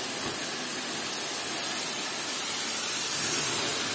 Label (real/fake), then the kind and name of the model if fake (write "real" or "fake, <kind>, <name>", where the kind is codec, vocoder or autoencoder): real